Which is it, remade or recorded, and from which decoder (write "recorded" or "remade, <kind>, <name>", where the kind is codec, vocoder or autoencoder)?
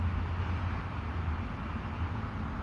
recorded